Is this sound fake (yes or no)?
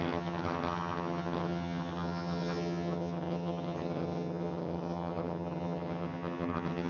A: yes